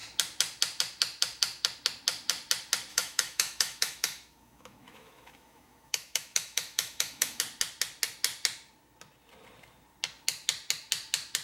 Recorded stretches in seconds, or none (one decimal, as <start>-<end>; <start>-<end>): 0.0-2.9; 7.4-11.4